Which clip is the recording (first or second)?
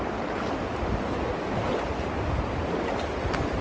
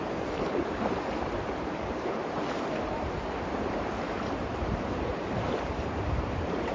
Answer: first